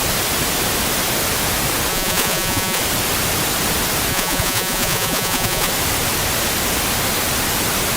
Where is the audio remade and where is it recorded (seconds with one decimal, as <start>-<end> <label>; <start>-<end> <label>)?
0.0-1.9 recorded; 1.9-2.8 remade; 2.8-4.1 recorded; 4.1-5.7 remade; 5.7-8.0 recorded